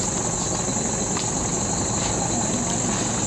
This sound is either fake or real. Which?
real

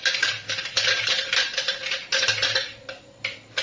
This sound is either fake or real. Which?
real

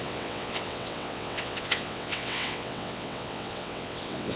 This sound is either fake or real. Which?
fake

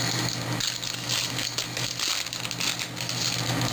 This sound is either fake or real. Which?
real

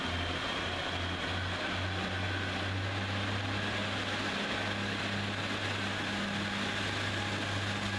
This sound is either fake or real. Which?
real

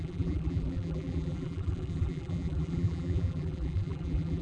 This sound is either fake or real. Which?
fake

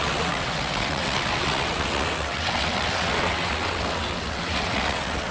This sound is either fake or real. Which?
fake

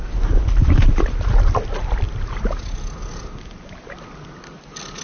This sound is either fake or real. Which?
real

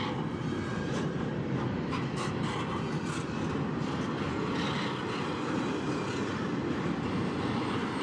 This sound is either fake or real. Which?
real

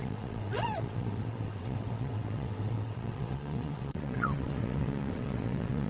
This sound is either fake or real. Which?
fake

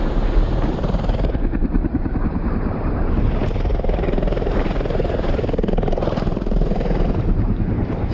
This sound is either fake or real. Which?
fake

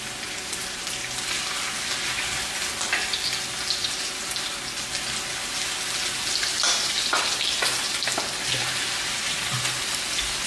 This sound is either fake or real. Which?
real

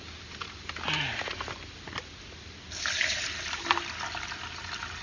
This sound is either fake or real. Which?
real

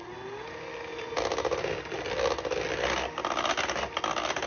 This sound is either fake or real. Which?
real